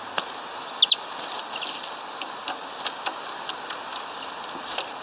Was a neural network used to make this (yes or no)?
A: no